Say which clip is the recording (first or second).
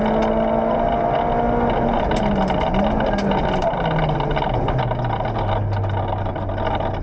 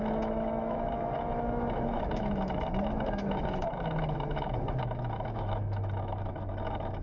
first